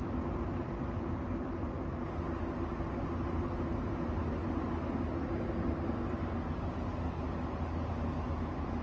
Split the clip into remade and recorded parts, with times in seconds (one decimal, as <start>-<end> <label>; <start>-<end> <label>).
0.0-8.8 recorded